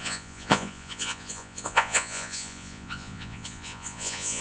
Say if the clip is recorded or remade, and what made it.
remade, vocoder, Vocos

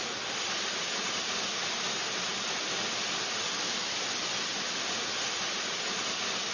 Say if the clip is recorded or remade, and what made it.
recorded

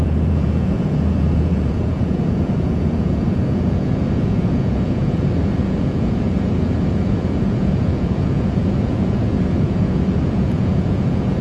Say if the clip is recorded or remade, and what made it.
remade, vocoder, Vocos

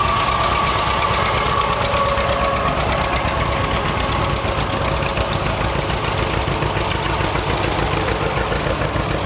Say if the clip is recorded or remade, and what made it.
recorded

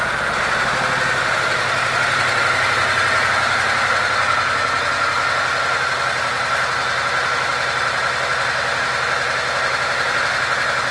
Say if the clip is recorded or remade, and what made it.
recorded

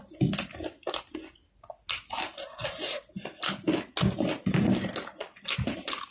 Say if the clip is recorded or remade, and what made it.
recorded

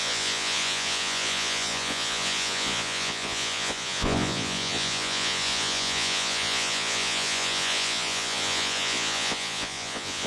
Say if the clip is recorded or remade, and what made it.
remade, vocoder, Vocos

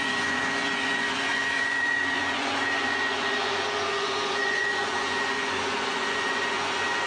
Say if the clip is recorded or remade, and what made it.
remade, vocoder, Vocos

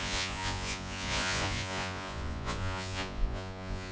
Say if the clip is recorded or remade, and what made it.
remade, vocoder, Vocos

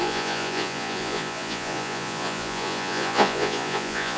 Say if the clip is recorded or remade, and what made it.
remade, vocoder, Vocos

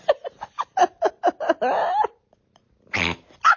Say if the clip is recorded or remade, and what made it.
recorded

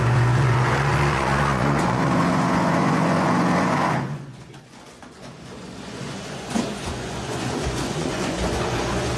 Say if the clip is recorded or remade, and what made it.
remade, vocoder, Vocos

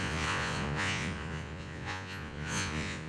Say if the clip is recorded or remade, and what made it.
remade, vocoder, Vocos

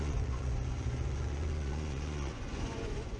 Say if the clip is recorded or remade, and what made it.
remade, vocoder, Vocos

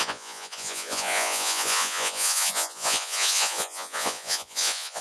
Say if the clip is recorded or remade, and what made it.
remade, vocoder, Vocos